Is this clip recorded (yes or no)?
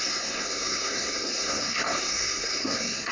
no